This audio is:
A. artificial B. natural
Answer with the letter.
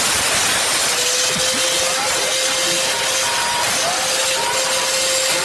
B